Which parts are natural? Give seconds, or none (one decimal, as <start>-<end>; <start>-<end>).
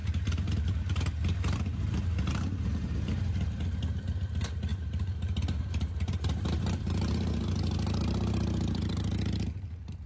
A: none